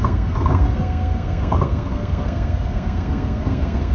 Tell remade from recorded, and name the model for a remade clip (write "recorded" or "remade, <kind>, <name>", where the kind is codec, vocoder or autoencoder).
remade, codec, SNAC